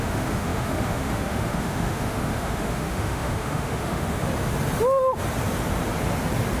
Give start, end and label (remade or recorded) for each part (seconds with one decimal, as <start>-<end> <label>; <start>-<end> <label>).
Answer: 0.0-4.2 remade; 4.2-6.6 recorded